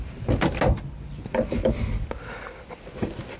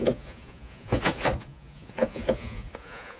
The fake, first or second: second